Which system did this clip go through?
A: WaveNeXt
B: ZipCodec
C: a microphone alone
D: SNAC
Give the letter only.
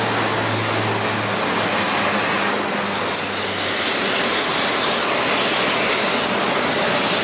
C